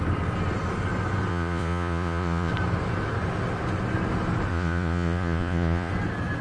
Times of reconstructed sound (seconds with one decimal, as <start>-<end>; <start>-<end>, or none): 1.3-2.5; 4.5-5.9